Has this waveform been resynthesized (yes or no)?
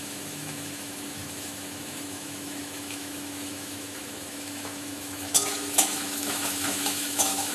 yes